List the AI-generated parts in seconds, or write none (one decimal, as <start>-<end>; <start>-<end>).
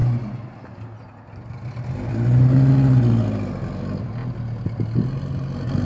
none